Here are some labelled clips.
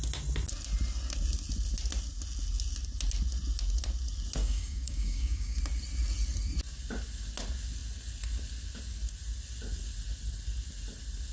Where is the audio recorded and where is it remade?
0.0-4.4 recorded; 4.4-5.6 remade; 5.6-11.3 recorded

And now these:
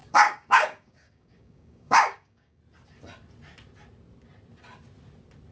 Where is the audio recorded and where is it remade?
0.0-2.6 remade; 2.6-5.5 recorded

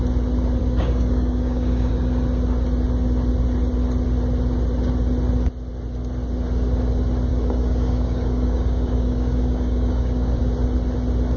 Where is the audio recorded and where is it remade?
0.0-0.6 recorded; 0.6-1.9 remade; 1.9-7.3 recorded; 7.3-10.4 remade; 10.4-11.4 recorded